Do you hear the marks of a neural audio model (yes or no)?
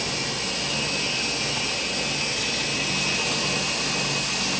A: no